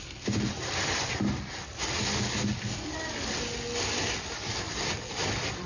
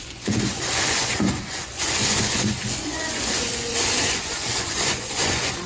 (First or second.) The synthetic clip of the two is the second